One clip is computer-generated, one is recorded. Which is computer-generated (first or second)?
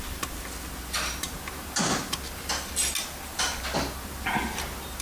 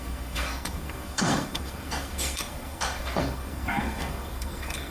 second